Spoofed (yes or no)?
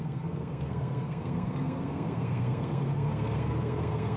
yes